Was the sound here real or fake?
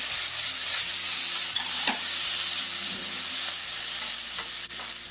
real